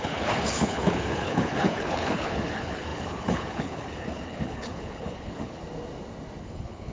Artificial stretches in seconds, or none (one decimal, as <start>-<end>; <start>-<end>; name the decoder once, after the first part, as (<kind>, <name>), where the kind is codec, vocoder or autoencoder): 0.0-5.6 (codec, HILCodec); 6.4-6.9